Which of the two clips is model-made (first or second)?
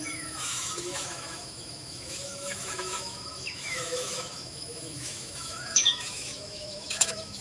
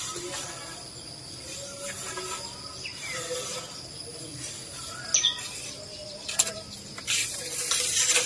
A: first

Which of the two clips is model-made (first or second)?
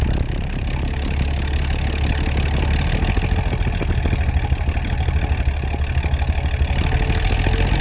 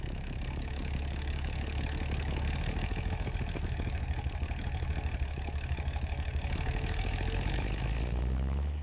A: second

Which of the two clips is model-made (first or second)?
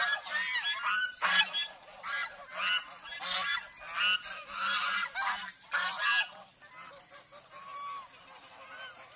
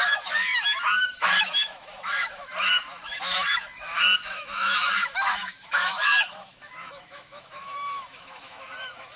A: second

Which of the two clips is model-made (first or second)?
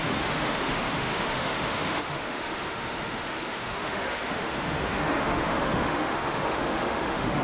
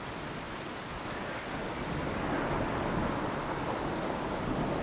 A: first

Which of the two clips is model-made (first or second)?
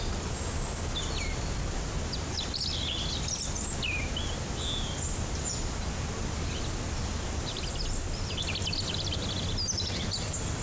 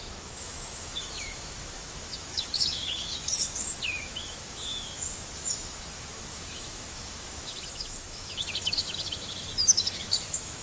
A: second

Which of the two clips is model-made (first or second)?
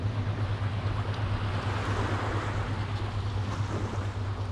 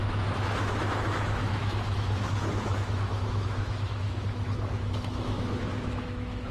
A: second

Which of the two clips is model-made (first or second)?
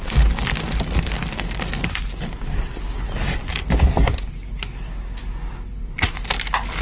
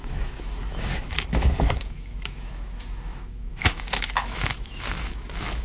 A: second